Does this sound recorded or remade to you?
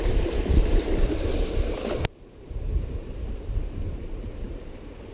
remade